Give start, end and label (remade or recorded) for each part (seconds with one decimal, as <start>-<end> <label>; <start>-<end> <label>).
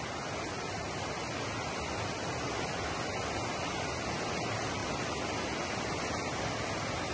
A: 0.0-7.1 recorded